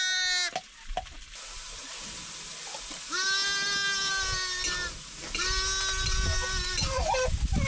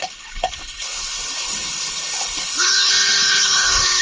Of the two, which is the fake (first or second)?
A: second